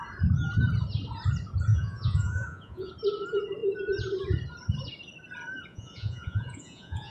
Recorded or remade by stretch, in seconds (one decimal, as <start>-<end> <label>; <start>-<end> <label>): 0.0-1.7 recorded; 1.7-2.9 remade; 2.9-5.7 recorded; 5.7-7.1 remade